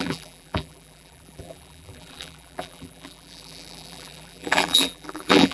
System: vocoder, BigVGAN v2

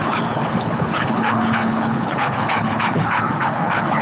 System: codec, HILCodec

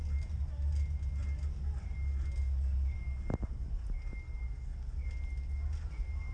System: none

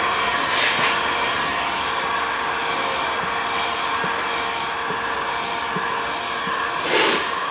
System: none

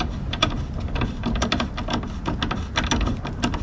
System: none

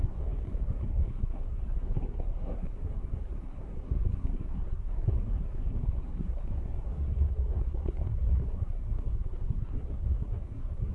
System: codec, SNAC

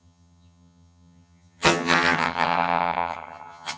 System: vocoder, HiFi-GAN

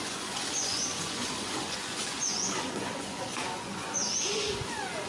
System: vocoder, Vocos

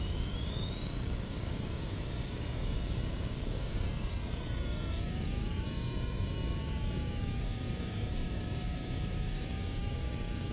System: codec, DAC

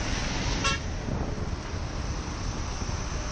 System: none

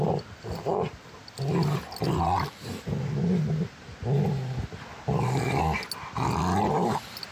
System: none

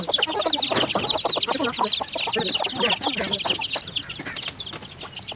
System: none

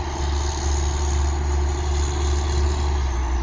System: none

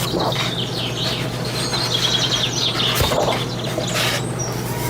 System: none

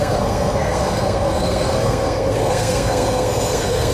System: codec, SNAC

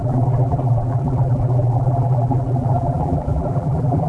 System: vocoder, BigVGAN v2